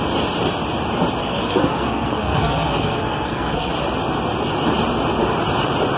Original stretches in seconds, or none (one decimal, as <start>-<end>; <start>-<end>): 0.0-1.2; 3.7-6.0